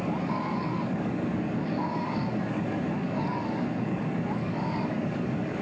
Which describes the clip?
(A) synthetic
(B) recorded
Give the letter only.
A